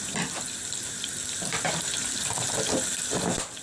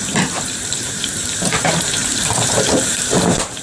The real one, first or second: first